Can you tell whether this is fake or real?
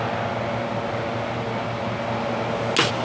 real